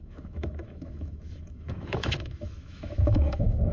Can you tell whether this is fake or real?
fake